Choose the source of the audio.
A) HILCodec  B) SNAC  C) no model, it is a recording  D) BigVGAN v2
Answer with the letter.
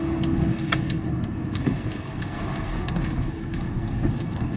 B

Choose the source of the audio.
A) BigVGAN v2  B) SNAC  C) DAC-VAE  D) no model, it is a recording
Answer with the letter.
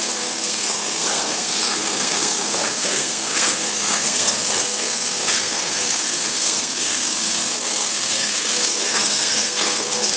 B